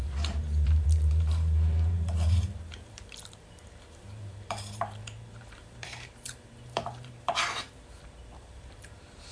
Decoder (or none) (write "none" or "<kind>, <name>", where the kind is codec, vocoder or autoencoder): vocoder, BigVGAN v2